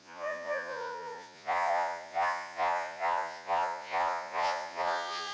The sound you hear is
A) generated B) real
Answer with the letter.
A